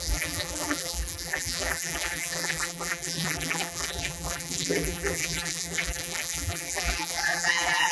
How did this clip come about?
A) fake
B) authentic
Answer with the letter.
A